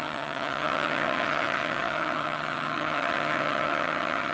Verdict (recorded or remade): remade